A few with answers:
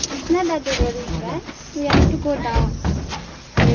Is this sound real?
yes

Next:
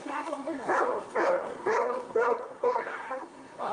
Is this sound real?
no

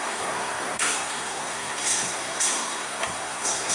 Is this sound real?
no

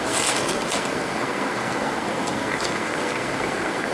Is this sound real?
no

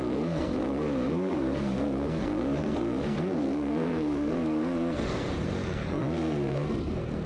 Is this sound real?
no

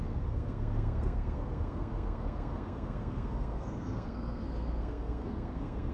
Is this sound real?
no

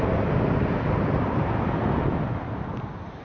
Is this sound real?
yes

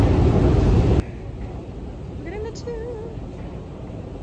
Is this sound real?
yes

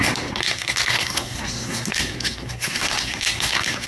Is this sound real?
no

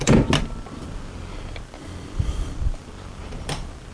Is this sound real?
yes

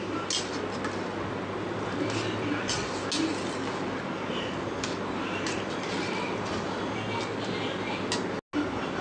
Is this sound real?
yes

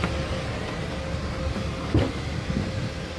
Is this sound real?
yes